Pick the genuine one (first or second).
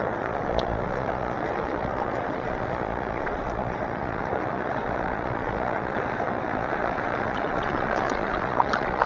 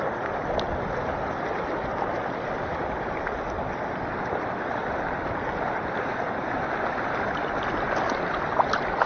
second